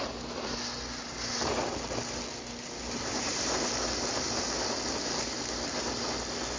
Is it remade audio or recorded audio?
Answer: recorded